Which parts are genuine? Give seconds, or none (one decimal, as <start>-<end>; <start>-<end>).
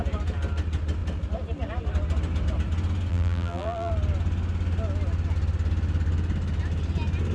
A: 0.0-3.1; 3.9-7.3